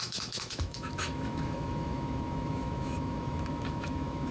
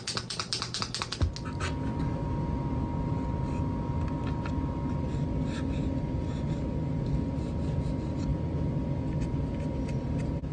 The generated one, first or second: first